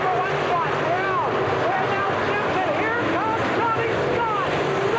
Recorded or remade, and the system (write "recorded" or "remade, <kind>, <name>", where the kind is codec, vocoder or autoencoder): recorded